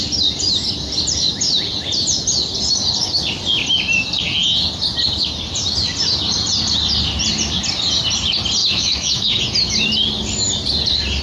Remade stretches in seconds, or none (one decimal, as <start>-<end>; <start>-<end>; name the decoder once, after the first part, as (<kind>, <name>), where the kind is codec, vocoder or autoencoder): 8.6-9.4 (autoencoder, DAC-VAE)